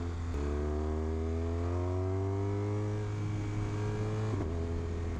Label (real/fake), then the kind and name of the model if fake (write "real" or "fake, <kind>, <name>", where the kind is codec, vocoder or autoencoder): real